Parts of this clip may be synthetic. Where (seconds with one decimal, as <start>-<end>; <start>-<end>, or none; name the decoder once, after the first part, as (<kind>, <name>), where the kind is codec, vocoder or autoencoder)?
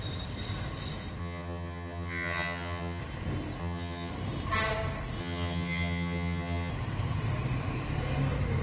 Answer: 1.2-3.0 (vocoder, HiFi-GAN); 3.6-4.1; 5.2-6.7